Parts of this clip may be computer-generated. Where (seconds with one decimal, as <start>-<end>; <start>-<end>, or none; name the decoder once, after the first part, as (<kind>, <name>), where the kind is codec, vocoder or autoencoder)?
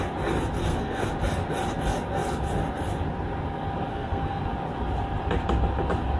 0.6-1.1 (codec, SNAC); 3.9-4.4